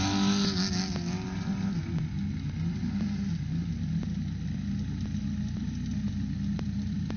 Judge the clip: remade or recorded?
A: recorded